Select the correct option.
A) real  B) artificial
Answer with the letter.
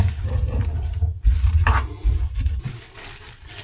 A